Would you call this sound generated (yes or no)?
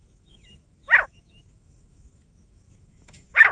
yes